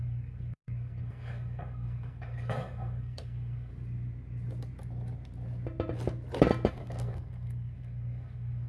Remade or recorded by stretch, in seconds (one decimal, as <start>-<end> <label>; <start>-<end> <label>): 0.0-3.7 remade; 3.7-6.7 recorded; 6.7-8.7 remade